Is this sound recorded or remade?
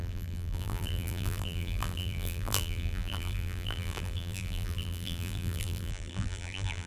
remade